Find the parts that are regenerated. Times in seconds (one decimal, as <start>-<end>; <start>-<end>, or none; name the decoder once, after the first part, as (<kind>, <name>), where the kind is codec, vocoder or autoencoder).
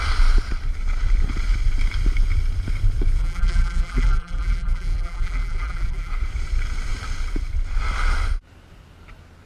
3.2-6.1 (vocoder, BigVGAN v2)